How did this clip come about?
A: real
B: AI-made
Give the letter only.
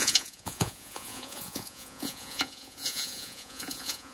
B